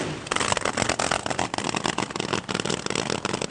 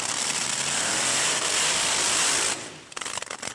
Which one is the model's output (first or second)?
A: second